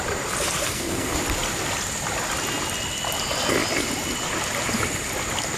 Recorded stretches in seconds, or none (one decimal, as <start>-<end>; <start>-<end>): 0.0-0.6; 1.2-5.6

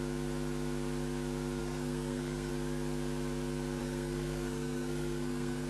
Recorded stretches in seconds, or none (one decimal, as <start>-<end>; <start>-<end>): 0.0-1.6; 2.5-3.8

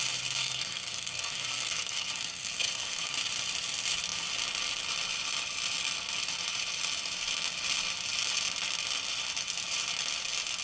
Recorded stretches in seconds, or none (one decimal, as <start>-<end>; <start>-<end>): 0.0-0.4; 3.1-10.6

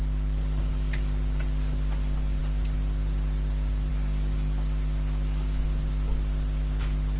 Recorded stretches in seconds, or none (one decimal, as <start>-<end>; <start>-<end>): 0.0-7.2

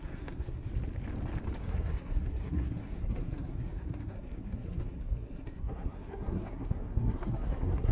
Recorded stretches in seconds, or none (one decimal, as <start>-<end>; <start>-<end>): 0.7-1.6

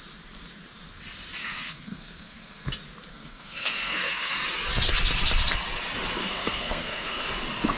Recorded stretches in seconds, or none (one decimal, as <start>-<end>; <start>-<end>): 0.0-1.4; 2.7-3.1; 4.3-6.2; 7.3-7.8

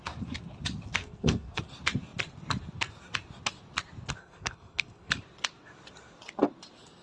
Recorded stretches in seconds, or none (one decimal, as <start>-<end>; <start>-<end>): 0.0-1.0; 1.6-4.2; 5.1-7.0